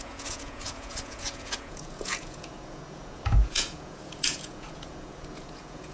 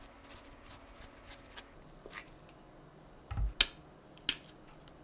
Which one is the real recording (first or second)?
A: second